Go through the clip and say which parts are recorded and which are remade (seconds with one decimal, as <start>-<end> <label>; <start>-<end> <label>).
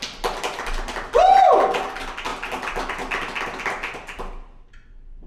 0.0-5.3 recorded